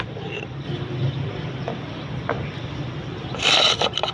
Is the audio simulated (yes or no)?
yes